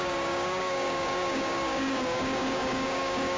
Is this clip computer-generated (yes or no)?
yes